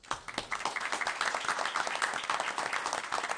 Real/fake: real